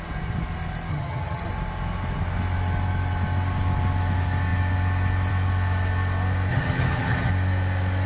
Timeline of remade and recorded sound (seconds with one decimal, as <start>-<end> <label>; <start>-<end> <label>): 0.0-0.9 recorded; 0.9-1.5 remade; 1.5-6.5 recorded; 6.5-7.3 remade; 7.3-8.1 recorded